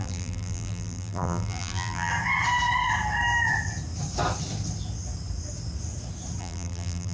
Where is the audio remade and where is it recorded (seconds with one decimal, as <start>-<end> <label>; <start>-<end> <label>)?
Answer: 0.0-2.1 remade; 2.1-6.4 recorded; 6.4-7.1 remade